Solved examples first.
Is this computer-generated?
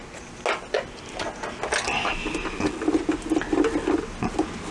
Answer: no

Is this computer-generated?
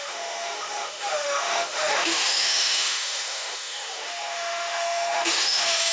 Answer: yes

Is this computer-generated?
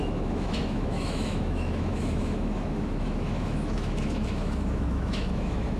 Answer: yes